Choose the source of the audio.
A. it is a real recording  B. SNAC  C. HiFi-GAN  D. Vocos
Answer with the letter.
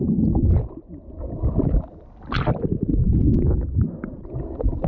A